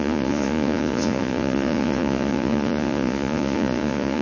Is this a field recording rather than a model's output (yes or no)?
no